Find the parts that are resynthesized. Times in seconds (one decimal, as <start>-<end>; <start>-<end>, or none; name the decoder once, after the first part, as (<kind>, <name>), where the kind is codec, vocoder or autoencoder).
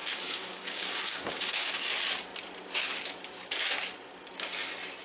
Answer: 0.0-1.9 (codec, DAC)